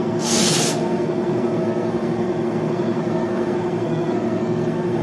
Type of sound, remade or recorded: remade